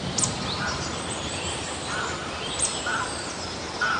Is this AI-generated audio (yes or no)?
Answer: no